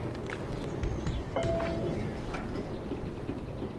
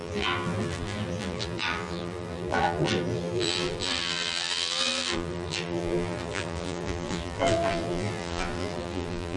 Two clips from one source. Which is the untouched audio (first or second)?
first